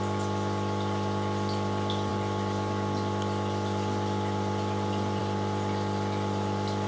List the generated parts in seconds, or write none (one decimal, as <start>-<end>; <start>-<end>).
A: none